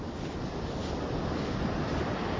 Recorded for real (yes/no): yes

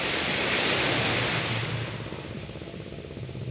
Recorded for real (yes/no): yes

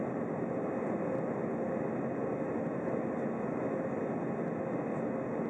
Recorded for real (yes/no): yes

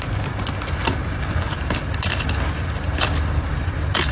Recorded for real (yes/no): yes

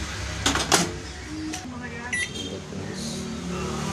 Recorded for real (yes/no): yes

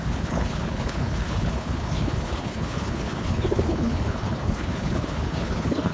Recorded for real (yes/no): no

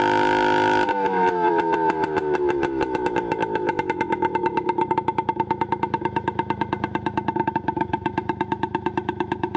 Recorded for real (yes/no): no